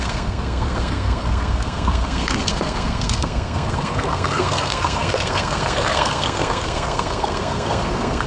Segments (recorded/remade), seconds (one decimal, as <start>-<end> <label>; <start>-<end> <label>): 0.0-8.3 remade